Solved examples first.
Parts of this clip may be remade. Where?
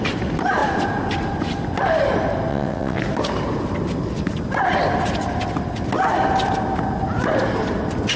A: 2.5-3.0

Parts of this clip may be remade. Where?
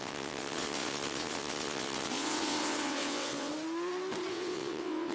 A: 0.0-3.5; 4.3-5.1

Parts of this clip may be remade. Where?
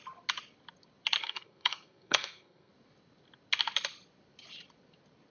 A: 1.2-2.7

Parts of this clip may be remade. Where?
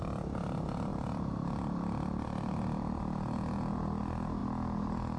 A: none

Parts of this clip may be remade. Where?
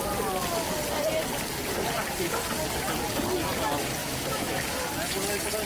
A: 4.0-4.6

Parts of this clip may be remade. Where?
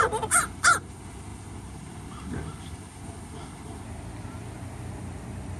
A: none